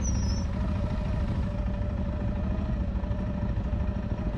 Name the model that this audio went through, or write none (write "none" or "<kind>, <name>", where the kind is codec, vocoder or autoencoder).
none